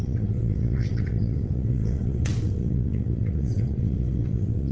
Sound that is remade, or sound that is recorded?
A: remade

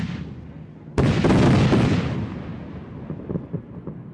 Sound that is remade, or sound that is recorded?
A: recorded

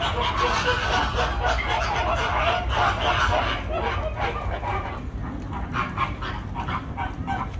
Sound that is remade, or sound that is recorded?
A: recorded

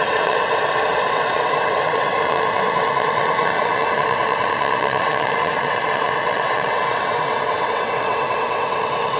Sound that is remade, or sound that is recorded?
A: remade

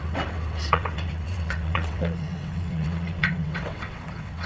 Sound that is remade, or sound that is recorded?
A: remade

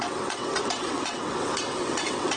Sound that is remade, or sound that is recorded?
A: remade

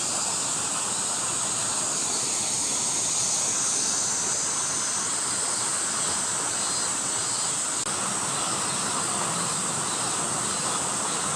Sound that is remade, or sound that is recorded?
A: recorded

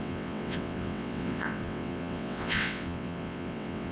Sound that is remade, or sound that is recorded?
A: remade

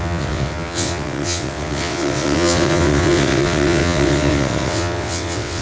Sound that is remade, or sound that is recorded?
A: remade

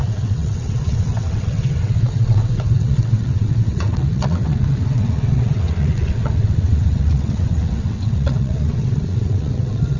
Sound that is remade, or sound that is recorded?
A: remade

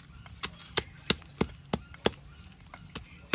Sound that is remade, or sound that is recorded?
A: recorded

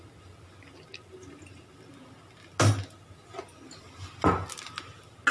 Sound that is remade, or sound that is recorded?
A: recorded